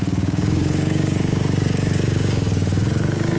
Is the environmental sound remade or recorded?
remade